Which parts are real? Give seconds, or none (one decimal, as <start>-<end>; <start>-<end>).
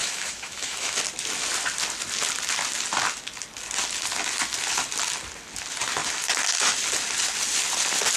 1.0-8.2